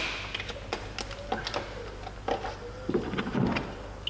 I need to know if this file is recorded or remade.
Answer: recorded